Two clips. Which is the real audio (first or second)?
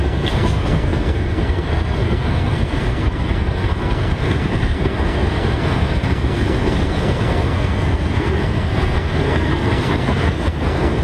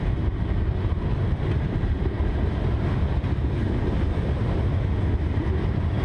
second